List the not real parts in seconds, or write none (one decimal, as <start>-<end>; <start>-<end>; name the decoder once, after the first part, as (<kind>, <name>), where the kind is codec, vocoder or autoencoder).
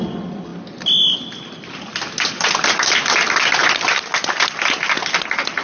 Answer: none